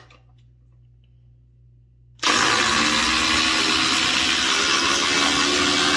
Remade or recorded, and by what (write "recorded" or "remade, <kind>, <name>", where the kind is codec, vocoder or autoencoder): recorded